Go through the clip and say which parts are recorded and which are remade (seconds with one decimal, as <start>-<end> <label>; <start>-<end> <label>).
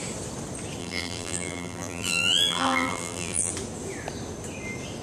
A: 0.0-0.8 recorded; 0.8-3.5 remade; 3.5-5.0 recorded